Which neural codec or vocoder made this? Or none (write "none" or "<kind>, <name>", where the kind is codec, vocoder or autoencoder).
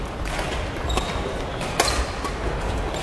none